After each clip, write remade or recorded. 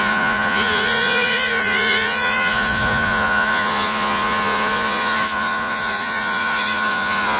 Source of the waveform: remade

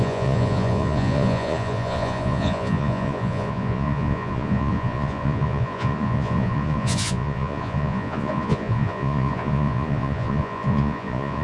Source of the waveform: remade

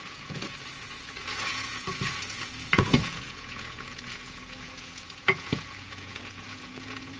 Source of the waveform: remade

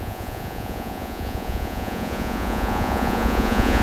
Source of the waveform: remade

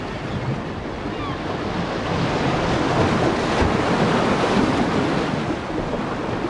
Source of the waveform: recorded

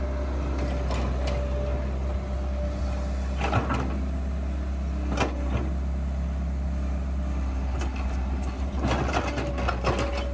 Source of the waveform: recorded